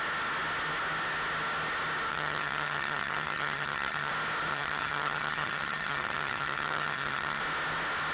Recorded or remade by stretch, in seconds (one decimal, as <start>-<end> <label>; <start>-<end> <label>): 0.0-2.1 recorded; 2.1-4.1 remade; 4.1-4.5 recorded; 4.5-7.4 remade; 7.4-8.1 recorded